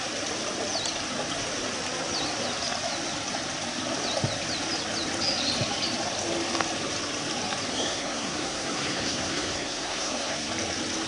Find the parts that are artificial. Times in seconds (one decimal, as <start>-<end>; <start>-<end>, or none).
7.7-10.5